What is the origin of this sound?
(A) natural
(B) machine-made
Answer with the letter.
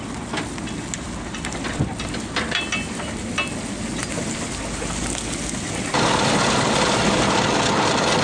A